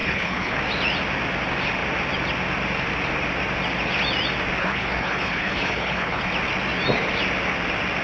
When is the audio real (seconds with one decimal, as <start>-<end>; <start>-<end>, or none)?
0.6-4.6; 6.3-8.0